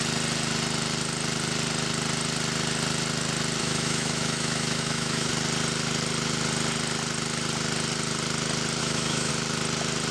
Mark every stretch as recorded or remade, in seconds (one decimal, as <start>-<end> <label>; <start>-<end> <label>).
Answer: 0.0-3.6 recorded; 3.6-5.3 remade; 5.3-8.8 recorded; 8.8-9.3 remade; 9.3-10.1 recorded